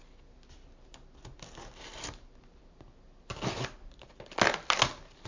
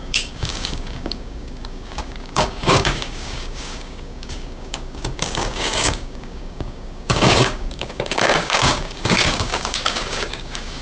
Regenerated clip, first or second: second